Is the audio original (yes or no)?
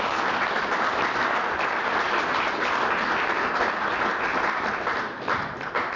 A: yes